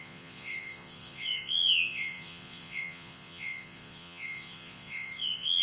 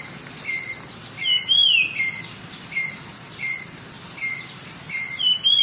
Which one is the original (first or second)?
second